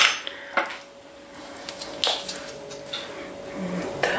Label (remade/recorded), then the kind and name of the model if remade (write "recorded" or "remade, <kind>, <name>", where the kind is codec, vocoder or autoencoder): recorded